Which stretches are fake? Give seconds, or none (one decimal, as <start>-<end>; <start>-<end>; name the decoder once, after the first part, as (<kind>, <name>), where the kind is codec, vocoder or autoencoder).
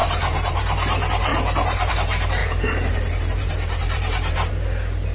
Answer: 0.0-0.6 (vocoder, BigVGAN v2); 2.4-4.5